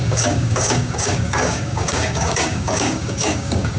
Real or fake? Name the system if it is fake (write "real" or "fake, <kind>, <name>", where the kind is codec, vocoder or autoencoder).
fake, codec, DAC